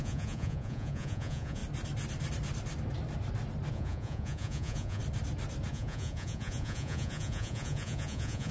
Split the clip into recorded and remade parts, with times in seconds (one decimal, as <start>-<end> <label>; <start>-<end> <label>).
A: 0.0-1.6 remade; 1.6-3.7 recorded; 3.7-5.0 remade; 5.0-5.7 recorded; 5.7-8.5 remade